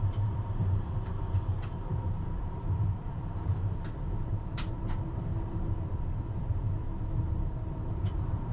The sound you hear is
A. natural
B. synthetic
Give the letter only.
B